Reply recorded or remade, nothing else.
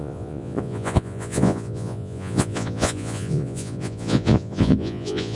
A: remade